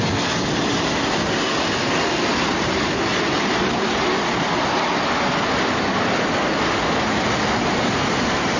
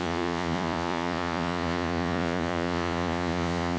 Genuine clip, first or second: first